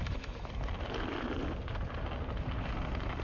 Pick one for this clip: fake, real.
real